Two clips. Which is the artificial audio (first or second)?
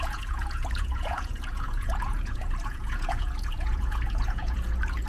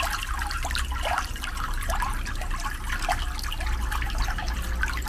first